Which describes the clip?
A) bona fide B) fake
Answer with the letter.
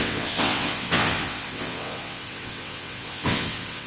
B